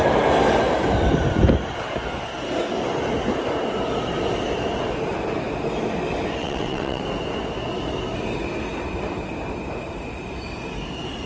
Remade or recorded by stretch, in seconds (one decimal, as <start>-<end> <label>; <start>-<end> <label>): 0.0-6.4 recorded; 6.4-7.0 remade; 7.0-11.3 recorded